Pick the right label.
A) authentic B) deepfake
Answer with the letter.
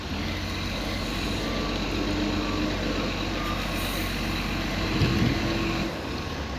A